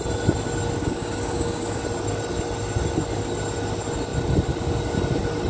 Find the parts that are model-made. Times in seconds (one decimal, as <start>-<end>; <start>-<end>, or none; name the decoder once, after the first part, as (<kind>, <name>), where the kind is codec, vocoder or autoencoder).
0.8-1.8 (codec, DAC)